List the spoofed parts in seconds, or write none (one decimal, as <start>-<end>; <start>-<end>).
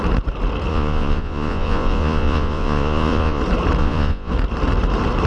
0.7-3.4; 3.8-4.3